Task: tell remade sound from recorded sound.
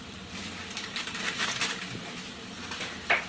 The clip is recorded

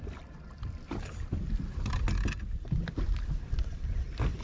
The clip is recorded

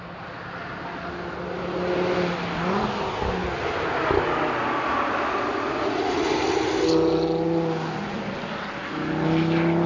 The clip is recorded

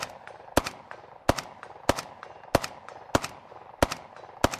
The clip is recorded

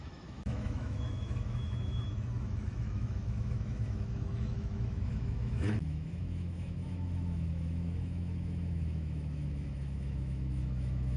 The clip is remade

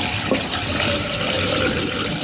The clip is recorded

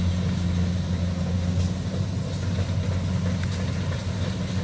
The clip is recorded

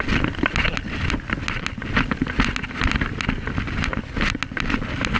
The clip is recorded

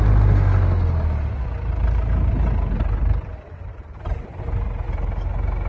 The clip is recorded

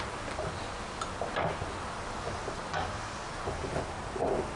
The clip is recorded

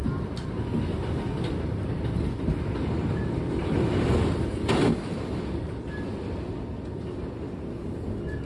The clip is recorded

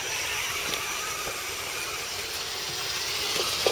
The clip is recorded